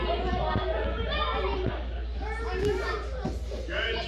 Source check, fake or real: real